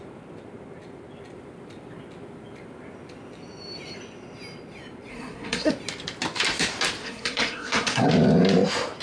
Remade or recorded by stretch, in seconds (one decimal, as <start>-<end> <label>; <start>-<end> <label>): 0.0-5.1 recorded; 5.1-5.7 remade; 5.7-7.0 recorded; 7.0-8.1 remade; 8.1-9.0 recorded